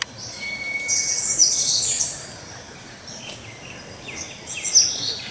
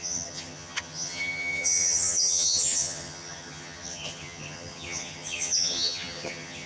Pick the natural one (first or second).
first